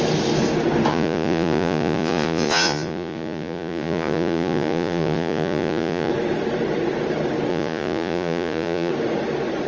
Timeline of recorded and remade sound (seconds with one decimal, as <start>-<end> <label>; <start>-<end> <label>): 0.0-0.9 recorded; 0.9-6.1 remade; 6.1-7.5 recorded; 7.5-8.9 remade; 8.9-9.7 recorded